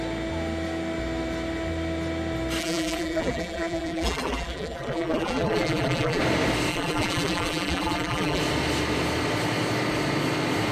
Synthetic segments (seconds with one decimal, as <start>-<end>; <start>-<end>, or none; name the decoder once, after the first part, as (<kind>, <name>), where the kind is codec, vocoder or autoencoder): 2.6-6.2 (vocoder, BigVGAN v2); 6.7-8.4